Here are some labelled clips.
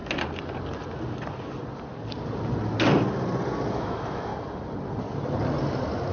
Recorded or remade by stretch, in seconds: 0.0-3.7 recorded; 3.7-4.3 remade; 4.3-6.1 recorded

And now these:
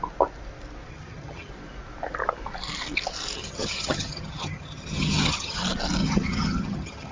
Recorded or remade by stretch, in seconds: 0.0-0.9 recorded; 0.9-1.5 remade; 1.5-3.4 recorded; 3.4-5.6 remade; 5.6-6.0 recorded; 6.0-7.1 remade

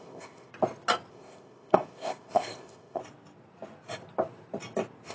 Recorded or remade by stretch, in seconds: 0.0-0.5 remade; 0.5-1.1 recorded; 1.1-3.0 remade; 3.0-5.1 recorded

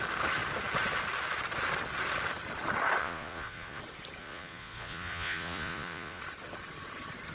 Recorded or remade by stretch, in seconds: 0.0-3.0 recorded; 3.0-3.8 remade; 3.8-4.2 recorded; 4.2-6.2 remade; 6.2-7.3 recorded

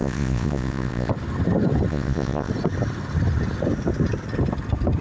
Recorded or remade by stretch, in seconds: 0.0-1.1 remade; 1.1-1.9 recorded; 1.9-2.5 remade; 2.5-5.0 recorded

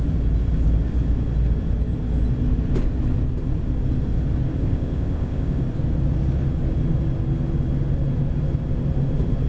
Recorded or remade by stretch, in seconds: 0.0-4.6 recorded; 4.6-5.6 remade; 5.6-9.5 recorded

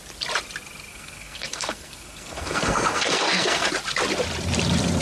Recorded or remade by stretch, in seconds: 0.0-0.9 recorded; 0.9-3.7 remade; 3.7-5.0 recorded